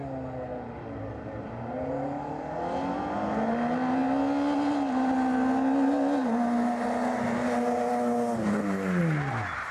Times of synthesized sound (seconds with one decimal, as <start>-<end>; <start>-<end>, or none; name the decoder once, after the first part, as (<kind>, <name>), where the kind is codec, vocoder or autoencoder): 0.5-3.5 (vocoder, BigVGAN v2)